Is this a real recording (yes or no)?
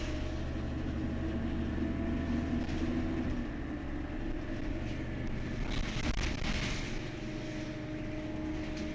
yes